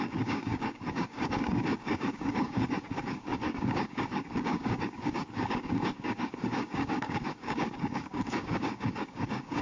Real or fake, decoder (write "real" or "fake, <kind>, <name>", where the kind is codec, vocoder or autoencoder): fake, codec, DAC